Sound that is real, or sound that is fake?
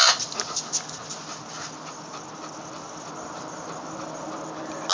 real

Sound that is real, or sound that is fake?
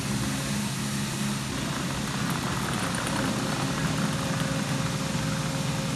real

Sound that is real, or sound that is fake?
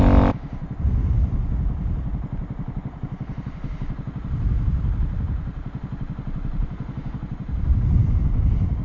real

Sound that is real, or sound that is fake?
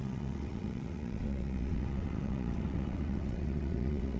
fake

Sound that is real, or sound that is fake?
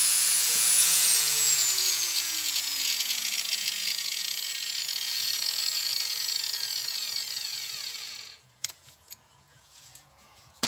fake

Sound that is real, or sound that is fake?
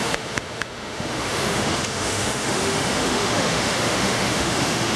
fake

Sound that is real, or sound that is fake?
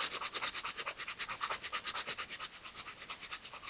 real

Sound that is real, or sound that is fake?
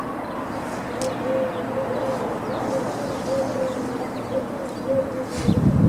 real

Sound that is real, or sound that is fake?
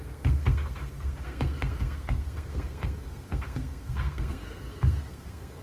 fake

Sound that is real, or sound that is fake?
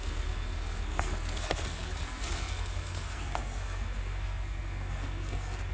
fake